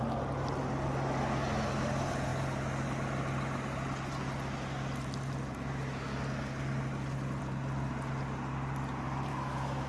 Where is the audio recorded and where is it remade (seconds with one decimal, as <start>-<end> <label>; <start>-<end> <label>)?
0.0-9.3 recorded; 9.3-9.9 remade